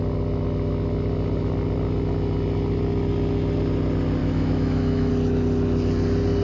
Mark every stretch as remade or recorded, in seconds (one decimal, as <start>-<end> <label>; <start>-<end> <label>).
0.0-4.2 recorded; 4.2-5.1 remade; 5.1-6.4 recorded